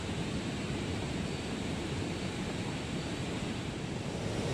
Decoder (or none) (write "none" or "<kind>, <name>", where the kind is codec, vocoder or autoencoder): vocoder, BigVGAN v2